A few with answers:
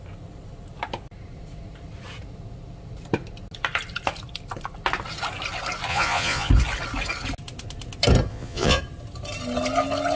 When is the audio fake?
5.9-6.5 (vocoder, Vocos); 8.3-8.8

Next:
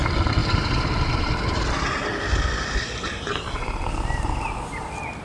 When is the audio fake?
0.4-3.5 (vocoder, BigVGAN v2)

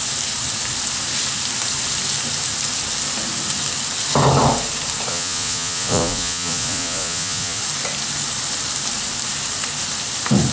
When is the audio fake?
5.1-7.6 (vocoder, Vocos)

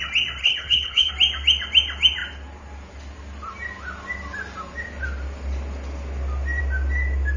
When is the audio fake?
0.4-1.1 (codec, HILCodec)

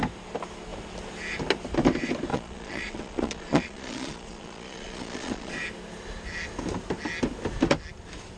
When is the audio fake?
2.3-5.5 (vocoder, Vocos)

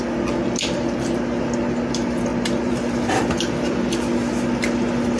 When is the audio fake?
2.3-3.9 (vocoder, BigVGAN v2)

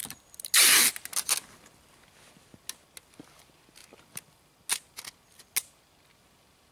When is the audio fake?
none